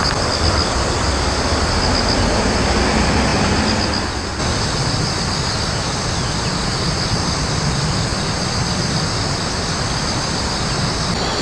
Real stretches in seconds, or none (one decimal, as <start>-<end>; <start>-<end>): 0.0-11.4